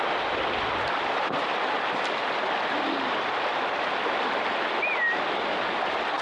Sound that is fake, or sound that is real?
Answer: real